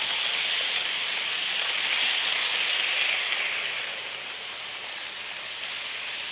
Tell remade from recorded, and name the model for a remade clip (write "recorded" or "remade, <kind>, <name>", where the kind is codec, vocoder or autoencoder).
recorded